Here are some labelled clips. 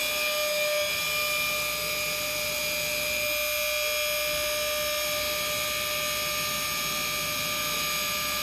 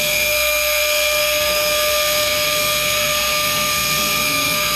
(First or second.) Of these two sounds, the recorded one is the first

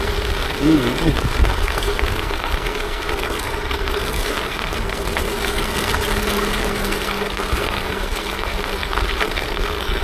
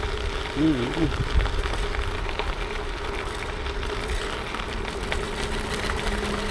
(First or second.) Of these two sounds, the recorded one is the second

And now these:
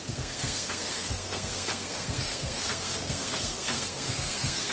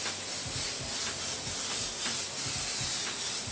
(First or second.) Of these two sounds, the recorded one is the second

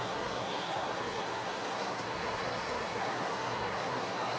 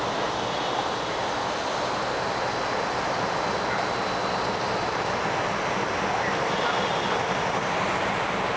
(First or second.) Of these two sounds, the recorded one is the second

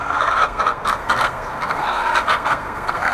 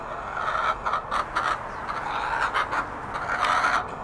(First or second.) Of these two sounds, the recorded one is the second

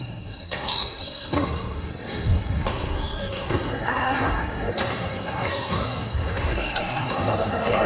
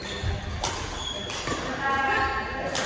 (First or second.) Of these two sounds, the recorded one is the second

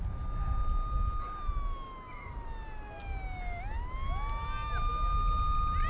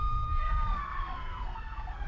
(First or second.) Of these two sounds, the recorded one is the first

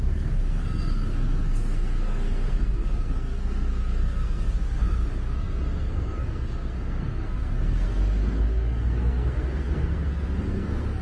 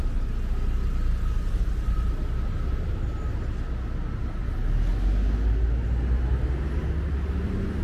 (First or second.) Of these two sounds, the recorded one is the second